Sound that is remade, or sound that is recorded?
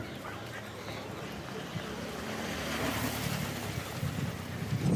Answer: recorded